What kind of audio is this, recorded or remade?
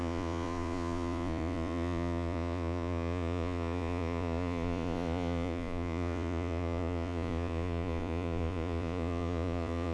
remade